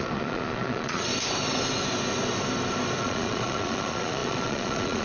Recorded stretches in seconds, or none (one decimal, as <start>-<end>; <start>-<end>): 1.1-3.0

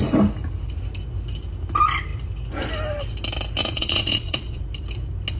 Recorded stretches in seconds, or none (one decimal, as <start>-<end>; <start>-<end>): 0.0-3.6; 4.6-5.4